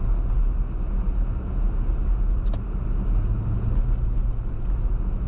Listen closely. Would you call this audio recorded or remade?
recorded